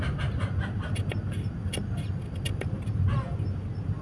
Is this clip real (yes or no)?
yes